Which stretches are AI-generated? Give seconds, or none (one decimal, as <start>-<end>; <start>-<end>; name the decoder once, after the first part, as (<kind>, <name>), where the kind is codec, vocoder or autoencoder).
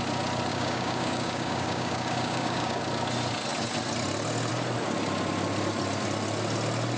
0.5-2.8 (codec, DAC)